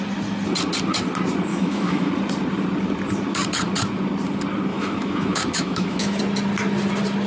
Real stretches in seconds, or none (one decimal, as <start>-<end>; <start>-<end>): 0.0-1.5; 2.1-4.7; 6.2-7.3